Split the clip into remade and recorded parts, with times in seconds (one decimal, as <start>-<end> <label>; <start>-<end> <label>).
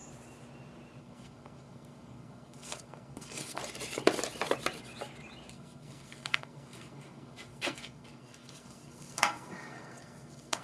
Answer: 0.0-1.0 recorded; 1.0-3.6 remade; 3.6-5.5 recorded; 5.5-10.6 remade